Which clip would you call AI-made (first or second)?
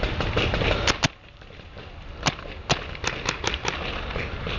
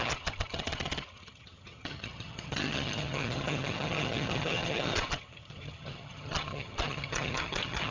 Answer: second